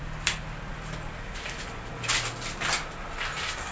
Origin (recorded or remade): recorded